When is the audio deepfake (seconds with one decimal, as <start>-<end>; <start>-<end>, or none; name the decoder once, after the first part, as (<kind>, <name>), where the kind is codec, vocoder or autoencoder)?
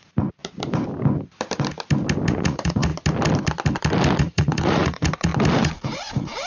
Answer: 0.0-0.4 (vocoder, Vocos); 2.3-2.9; 4.2-5.3; 5.8-6.5